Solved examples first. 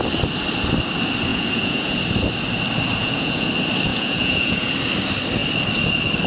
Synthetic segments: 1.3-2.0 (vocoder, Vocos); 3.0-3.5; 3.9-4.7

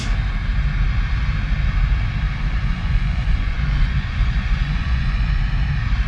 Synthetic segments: 2.7-5.4 (vocoder, Vocos)

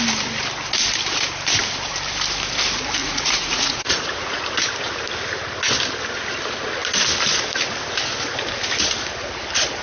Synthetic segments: 3.0-4.4 (vocoder, Vocos)

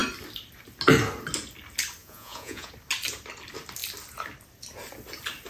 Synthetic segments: 2.0-2.7 (vocoder, Vocos)